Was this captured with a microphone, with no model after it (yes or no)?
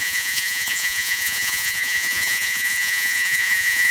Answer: no